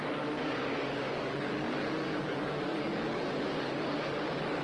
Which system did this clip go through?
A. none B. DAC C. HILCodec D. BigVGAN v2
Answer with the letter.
B